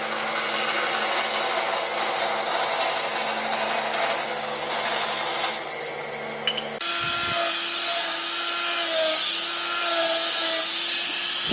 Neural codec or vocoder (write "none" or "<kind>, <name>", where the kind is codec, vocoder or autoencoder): none